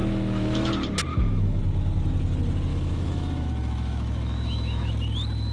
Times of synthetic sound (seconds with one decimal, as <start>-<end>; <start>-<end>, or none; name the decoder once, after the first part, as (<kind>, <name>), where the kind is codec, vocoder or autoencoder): 0.0-0.7 (autoencoder, DAC-VAE); 1.1-1.6; 2.7-4.9